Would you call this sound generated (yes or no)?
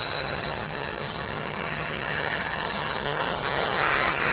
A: yes